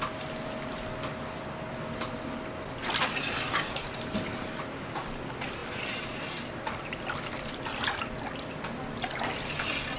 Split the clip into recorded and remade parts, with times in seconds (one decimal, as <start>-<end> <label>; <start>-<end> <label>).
0.0-10.0 recorded